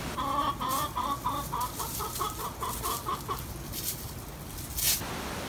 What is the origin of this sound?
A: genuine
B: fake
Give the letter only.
A